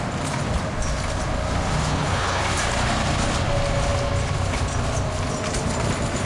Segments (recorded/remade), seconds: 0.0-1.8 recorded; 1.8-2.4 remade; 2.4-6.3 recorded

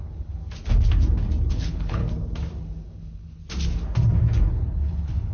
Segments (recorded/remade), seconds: 0.0-0.4 remade; 0.4-1.5 recorded; 1.5-2.0 remade; 2.0-2.6 recorded; 2.6-3.4 remade; 3.4-4.5 recorded; 4.5-5.3 remade